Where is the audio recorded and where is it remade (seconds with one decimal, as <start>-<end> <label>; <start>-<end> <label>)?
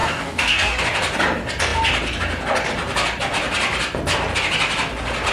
0.0-0.8 remade; 0.8-5.3 recorded